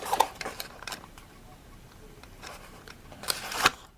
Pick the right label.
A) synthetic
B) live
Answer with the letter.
A